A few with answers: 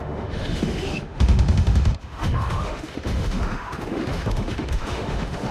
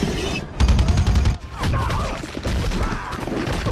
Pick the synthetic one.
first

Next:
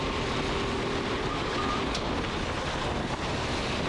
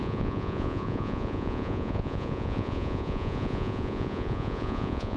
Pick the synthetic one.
second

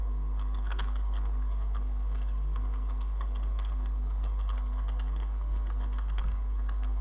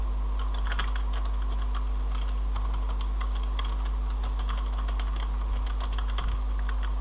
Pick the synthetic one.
first